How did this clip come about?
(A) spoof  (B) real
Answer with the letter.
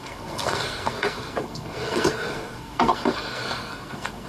A